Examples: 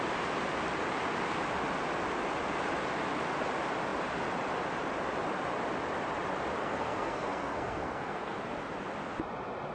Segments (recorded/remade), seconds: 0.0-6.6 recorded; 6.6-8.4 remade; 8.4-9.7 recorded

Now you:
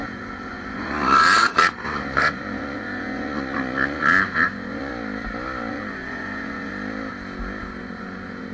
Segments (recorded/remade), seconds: 0.0-4.9 remade; 4.9-5.7 recorded; 5.7-6.7 remade; 6.7-7.6 recorded; 7.6-8.5 remade

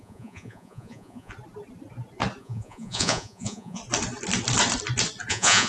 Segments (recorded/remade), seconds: 0.0-1.3 remade; 1.3-2.4 recorded; 2.4-3.8 remade; 3.8-5.3 recorded; 5.3-5.7 remade

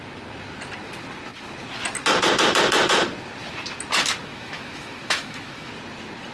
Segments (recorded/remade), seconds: 0.0-4.3 recorded; 4.3-5.7 remade; 5.7-6.3 recorded

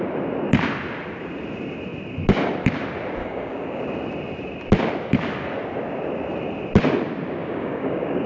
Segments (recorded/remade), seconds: 0.0-3.2 recorded; 3.2-3.8 remade; 3.8-7.4 recorded; 7.4-8.3 remade